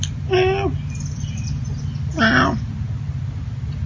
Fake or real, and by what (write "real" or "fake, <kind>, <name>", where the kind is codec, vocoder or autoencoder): real